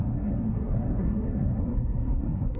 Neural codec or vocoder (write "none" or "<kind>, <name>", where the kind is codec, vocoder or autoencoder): codec, SNAC